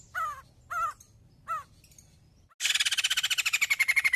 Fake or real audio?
real